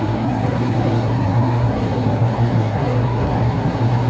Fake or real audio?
fake